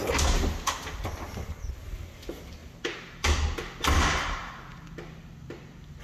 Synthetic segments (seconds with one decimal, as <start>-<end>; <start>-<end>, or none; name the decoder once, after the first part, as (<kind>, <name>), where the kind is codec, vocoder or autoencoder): none